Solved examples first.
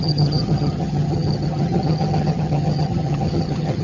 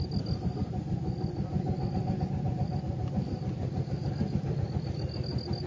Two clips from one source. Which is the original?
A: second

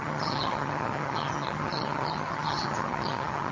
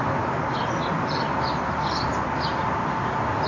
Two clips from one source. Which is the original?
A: second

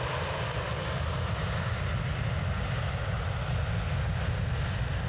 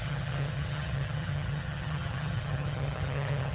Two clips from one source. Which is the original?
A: first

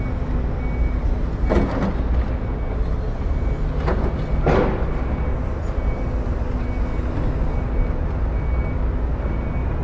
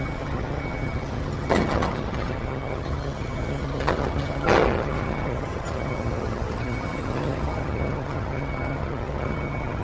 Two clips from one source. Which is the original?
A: first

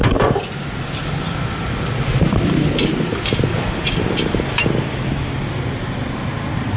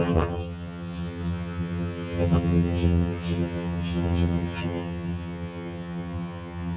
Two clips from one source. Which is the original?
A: first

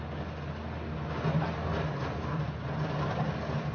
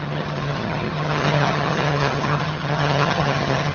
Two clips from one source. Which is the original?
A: first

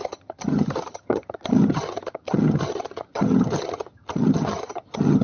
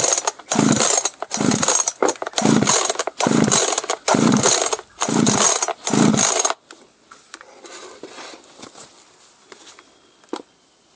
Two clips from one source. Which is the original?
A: second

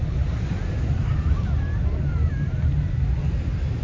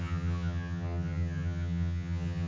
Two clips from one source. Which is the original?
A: first